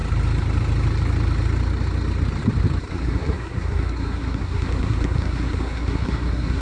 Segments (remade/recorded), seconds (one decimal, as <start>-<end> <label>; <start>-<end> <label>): 0.0-2.9 recorded; 2.9-6.6 remade